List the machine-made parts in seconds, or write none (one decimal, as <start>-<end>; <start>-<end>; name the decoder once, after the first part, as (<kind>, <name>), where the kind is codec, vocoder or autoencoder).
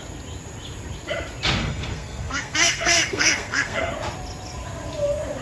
1.6-3.9 (codec, SNAC)